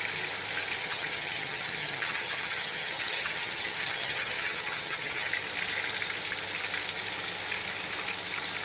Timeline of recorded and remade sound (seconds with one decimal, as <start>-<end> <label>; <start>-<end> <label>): 0.0-0.8 recorded; 0.8-5.3 remade; 5.3-8.6 recorded